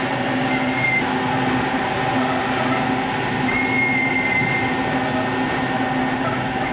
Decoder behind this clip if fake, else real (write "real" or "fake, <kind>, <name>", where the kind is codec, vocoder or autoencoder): real